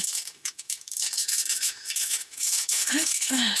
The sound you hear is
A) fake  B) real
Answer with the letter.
A